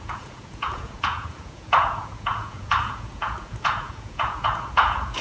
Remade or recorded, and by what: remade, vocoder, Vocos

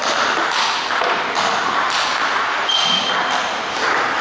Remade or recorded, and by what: recorded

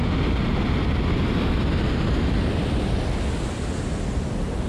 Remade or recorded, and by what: recorded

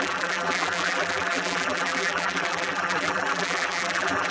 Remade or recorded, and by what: remade, vocoder, BigVGAN v2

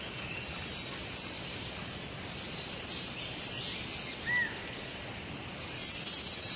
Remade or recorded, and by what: recorded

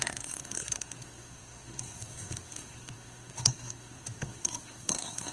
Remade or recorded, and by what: remade, codec, SNAC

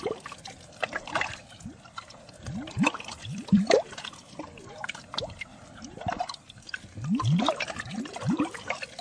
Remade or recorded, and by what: remade, vocoder, BigVGAN v2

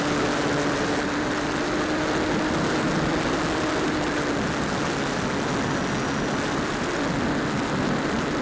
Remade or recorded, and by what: recorded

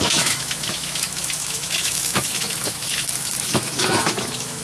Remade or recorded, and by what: remade, autoencoder, DAC-VAE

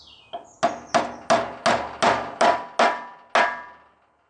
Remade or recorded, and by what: recorded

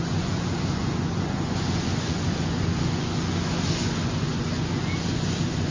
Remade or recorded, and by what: remade, vocoder, Vocos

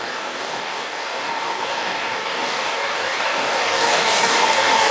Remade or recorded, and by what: remade, codec, DAC